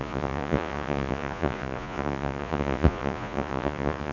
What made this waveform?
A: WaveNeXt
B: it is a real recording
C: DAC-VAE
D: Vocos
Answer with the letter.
D